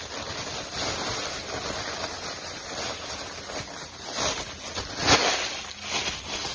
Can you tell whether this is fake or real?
real